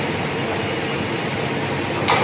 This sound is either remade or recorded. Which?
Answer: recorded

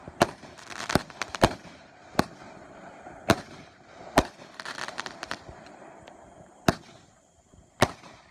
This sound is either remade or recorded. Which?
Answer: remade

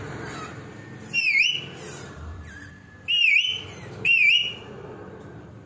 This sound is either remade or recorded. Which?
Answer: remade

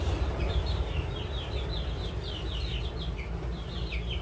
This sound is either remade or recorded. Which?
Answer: remade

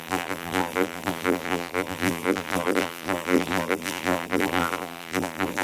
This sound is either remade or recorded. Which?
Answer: remade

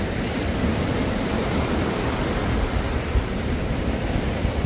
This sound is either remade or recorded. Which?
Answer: recorded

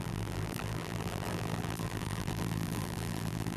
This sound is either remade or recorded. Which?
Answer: remade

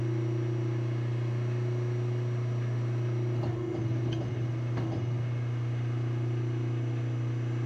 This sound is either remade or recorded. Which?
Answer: recorded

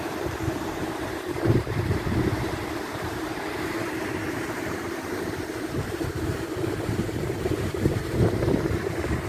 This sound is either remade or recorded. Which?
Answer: remade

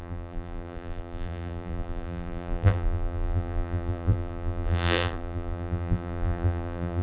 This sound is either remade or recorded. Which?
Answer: remade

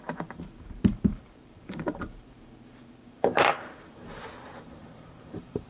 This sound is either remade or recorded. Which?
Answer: remade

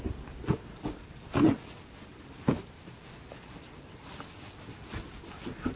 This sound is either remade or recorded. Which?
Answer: recorded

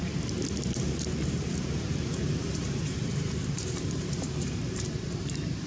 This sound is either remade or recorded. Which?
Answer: remade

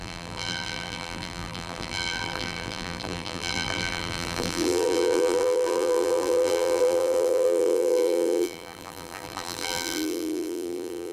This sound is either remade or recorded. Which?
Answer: remade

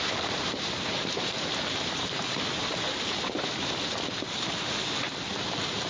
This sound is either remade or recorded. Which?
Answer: remade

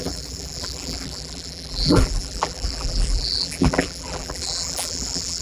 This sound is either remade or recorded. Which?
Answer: remade